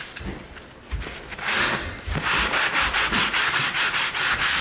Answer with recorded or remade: recorded